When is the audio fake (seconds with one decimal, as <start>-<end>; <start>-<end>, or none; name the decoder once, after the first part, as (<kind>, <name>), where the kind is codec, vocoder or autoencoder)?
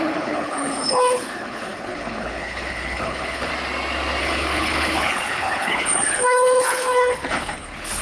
0.0-3.5 (codec, HILCodec); 4.2-8.0